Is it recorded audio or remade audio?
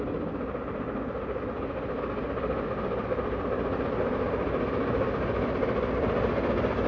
recorded